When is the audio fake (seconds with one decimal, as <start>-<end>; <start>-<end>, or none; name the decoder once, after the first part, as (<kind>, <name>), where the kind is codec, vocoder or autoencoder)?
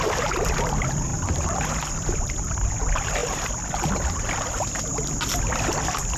none